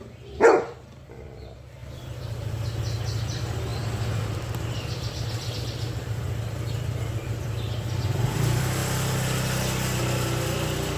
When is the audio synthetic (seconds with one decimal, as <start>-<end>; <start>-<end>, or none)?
0.0-8.8; 10.0-11.0